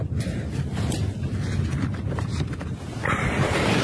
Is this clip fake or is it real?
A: real